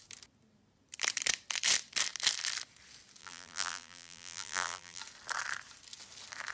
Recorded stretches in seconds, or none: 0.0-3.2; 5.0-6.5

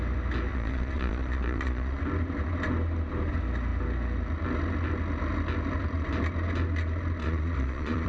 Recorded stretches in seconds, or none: 0.0-0.5; 2.0-7.2

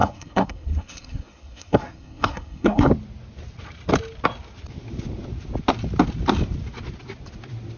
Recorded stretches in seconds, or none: 2.9-7.8

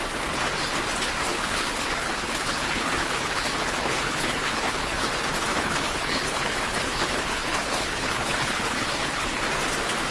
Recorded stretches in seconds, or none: 0.0-1.3; 5.1-5.5; 9.4-10.1

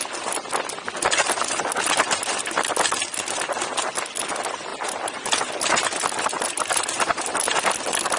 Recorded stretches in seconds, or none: 0.0-4.7; 5.3-8.2